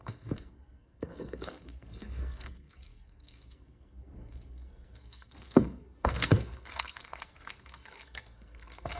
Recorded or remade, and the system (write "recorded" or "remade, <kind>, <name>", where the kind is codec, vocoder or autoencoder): remade, codec, SNAC